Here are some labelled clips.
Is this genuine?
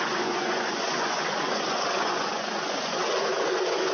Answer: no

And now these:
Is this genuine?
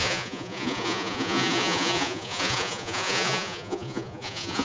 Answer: no